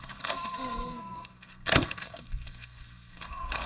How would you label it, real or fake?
fake